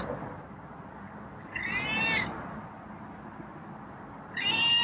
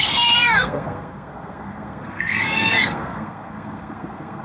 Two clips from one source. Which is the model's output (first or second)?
second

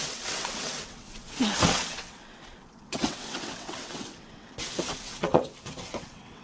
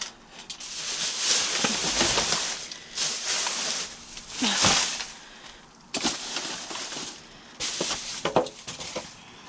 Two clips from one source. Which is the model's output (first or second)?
first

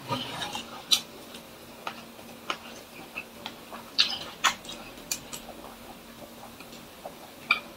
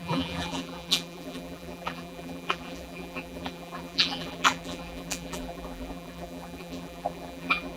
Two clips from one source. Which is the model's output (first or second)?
second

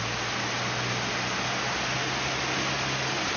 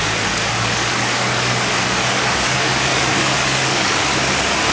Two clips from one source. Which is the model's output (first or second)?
second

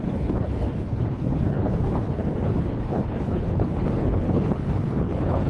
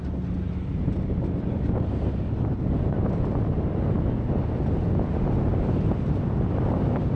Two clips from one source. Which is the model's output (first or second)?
first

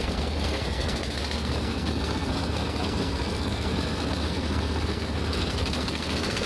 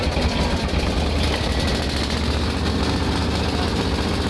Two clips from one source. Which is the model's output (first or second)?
first